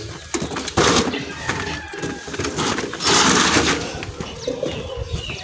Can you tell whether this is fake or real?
real